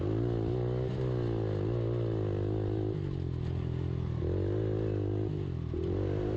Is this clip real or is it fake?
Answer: real